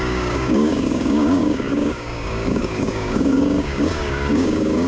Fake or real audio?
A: fake